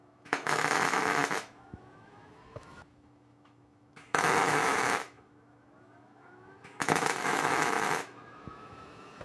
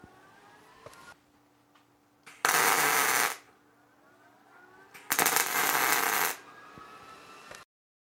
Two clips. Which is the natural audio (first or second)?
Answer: second